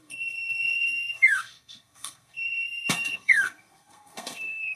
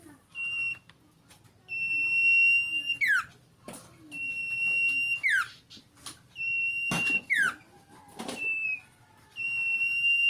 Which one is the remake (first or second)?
first